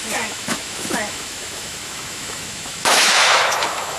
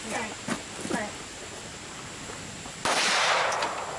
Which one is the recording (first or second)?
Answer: second